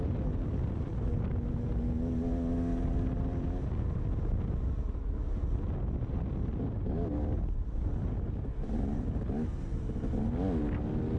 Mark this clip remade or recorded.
recorded